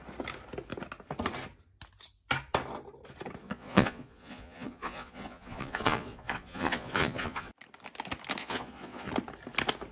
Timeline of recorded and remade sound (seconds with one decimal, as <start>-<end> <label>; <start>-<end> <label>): 0.0-3.4 recorded; 3.4-7.5 remade; 7.5-8.4 recorded; 8.4-9.1 remade; 9.1-9.9 recorded